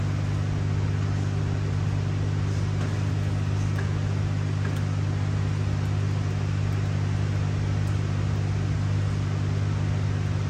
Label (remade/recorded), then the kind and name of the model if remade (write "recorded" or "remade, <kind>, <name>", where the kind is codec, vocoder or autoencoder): recorded